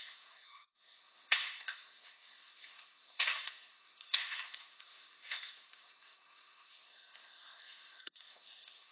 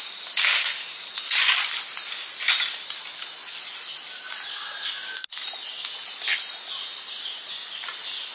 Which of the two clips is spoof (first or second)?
first